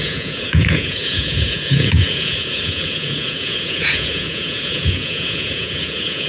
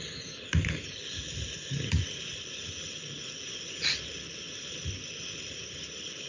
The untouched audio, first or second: second